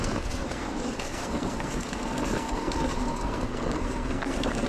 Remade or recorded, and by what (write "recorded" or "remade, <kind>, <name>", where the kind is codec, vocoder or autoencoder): remade, codec, SNAC